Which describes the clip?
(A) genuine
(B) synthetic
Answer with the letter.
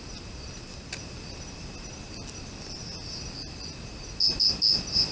A